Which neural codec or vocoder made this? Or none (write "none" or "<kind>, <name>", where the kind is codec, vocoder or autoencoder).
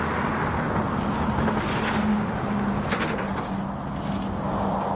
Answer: none